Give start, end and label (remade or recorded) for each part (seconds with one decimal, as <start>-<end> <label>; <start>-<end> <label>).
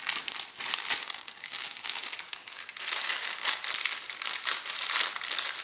0.0-1.0 recorded; 1.0-2.6 remade; 2.6-3.0 recorded; 3.0-3.6 remade; 3.6-5.6 recorded